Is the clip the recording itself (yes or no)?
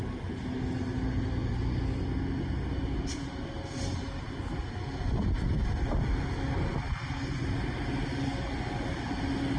yes